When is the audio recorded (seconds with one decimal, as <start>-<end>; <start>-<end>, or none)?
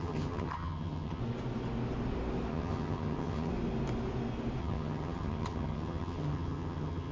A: 1.2-2.5; 3.5-4.6